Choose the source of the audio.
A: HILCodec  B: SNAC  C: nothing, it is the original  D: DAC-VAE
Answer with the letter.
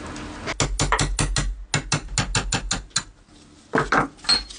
C